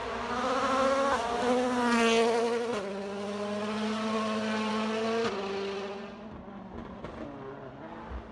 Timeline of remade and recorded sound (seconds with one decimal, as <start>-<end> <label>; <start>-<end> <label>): 0.0-8.3 recorded